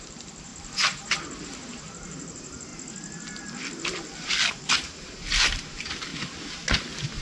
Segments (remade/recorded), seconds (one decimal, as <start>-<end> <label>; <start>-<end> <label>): 0.0-2.7 remade; 2.7-4.6 recorded; 4.6-6.1 remade; 6.1-7.2 recorded